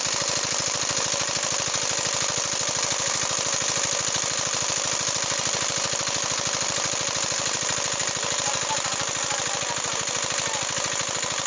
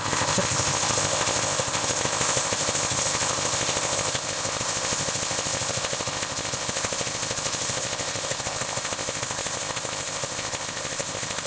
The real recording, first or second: first